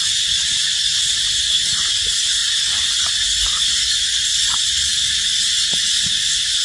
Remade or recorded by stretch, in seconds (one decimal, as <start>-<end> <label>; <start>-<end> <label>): 0.0-6.6 recorded